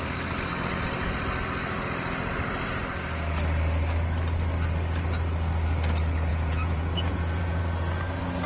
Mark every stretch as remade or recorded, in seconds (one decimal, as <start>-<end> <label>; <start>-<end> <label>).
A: 0.0-6.3 recorded; 6.3-7.6 remade; 7.6-8.5 recorded